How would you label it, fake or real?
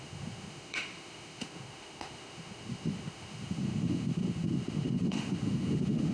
fake